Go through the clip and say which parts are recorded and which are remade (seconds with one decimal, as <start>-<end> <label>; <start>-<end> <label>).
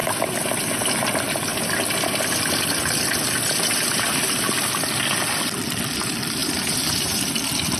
0.0-6.4 recorded; 6.4-7.3 remade; 7.3-7.8 recorded